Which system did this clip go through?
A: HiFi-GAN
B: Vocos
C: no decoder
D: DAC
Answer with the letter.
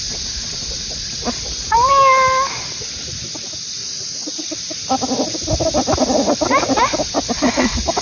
C